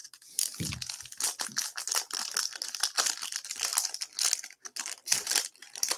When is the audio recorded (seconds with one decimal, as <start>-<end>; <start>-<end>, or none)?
0.0-6.0

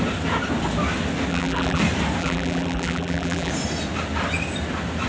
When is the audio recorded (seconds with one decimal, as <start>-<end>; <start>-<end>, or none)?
0.0-1.3; 1.8-2.2; 3.5-5.1

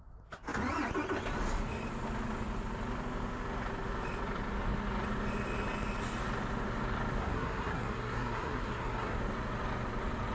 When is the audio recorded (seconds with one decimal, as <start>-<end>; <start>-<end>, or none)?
0.0-7.2; 9.2-10.3

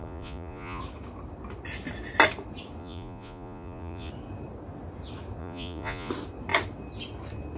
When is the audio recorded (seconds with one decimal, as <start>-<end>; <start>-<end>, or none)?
0.8-2.8; 4.1-5.4; 6.1-7.6

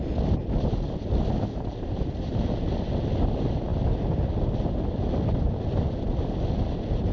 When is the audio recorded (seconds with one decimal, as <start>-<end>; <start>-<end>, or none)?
0.0-7.1